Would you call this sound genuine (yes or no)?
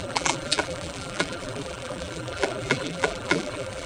no